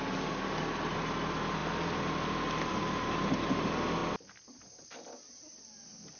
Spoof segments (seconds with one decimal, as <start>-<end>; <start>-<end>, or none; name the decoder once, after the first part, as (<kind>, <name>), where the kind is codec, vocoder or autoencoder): none